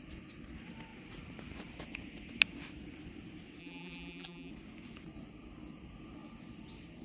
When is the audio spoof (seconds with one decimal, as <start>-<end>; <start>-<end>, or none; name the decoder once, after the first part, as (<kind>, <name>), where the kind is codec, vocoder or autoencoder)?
3.6-4.5 (vocoder, BigVGAN v2)